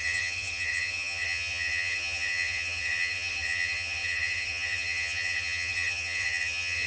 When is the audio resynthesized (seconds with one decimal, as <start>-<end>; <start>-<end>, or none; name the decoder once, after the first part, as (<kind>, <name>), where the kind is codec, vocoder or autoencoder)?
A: 0.0-6.9 (vocoder, HiFi-GAN)